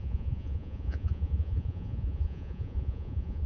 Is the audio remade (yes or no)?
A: yes